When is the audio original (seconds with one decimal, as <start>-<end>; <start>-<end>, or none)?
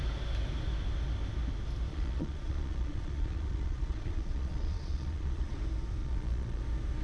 0.0-1.9; 5.6-6.0; 6.6-7.0